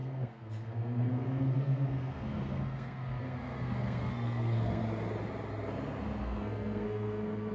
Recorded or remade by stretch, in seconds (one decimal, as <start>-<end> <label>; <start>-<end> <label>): 0.0-4.8 remade; 4.8-6.2 recorded; 6.2-7.5 remade